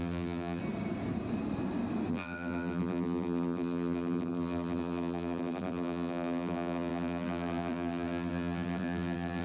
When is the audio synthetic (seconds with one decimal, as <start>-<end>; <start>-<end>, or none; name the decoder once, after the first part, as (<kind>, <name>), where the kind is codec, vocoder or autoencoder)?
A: 0.0-0.6 (vocoder, BigVGAN v2); 2.1-9.4